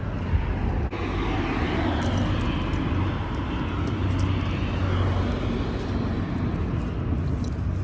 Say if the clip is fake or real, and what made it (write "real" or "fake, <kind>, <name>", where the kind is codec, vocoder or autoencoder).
real